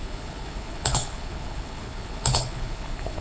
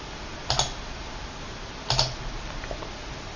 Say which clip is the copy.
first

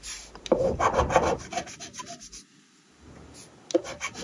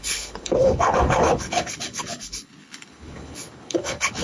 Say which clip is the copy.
second